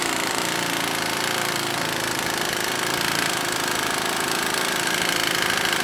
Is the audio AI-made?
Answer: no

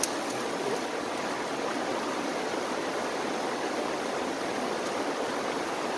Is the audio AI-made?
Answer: no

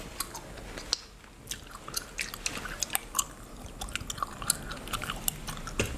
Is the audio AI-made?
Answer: no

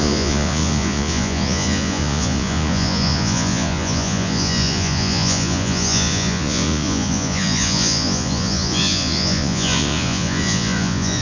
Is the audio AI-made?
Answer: yes